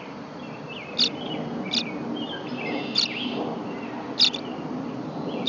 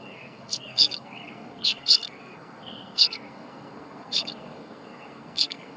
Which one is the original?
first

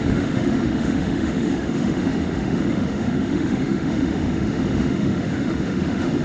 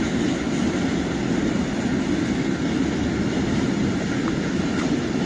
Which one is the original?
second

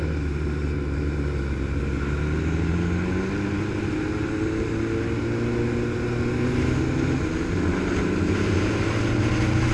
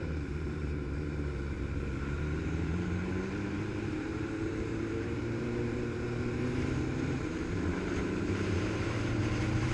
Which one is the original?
first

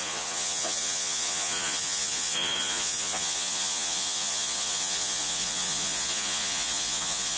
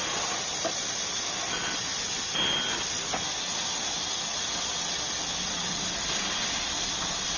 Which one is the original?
second